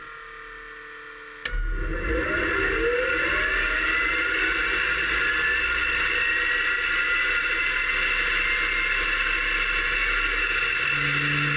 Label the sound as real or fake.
real